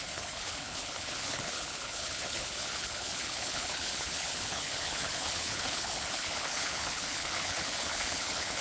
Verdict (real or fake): fake